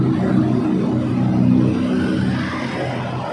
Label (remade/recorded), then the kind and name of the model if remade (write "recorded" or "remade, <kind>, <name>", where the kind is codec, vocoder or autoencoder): recorded